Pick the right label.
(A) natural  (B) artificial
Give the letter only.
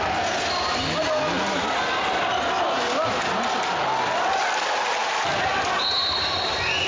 A